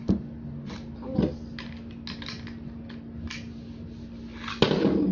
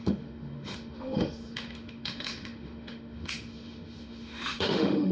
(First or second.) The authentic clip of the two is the first